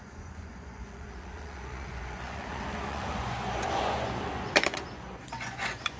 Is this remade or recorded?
remade